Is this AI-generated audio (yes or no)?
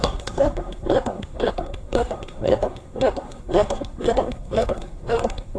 yes